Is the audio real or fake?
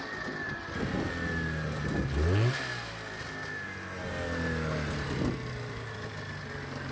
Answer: real